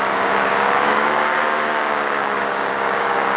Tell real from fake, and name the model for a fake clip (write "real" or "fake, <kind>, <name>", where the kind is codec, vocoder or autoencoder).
fake, codec, DAC